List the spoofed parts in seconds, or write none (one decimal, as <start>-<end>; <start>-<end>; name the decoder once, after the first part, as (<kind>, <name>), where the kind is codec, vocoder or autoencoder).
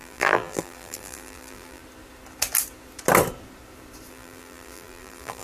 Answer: 0.0-1.8 (vocoder, BigVGAN v2); 4.1-5.4